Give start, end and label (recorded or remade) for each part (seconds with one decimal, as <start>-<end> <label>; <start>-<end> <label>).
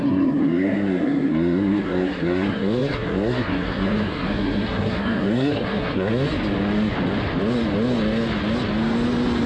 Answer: 0.0-6.1 remade; 6.1-9.5 recorded